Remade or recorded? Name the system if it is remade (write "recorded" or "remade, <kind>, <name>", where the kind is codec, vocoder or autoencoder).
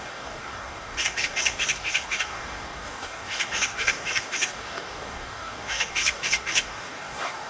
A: remade, codec, DAC